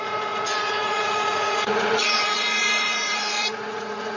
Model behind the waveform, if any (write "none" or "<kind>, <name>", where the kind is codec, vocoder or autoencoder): vocoder, Vocos